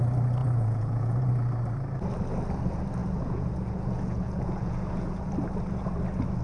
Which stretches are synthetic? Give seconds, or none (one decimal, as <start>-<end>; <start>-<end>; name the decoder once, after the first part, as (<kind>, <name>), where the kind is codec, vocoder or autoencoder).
0.4-1.3 (vocoder, Vocos); 3.0-5.3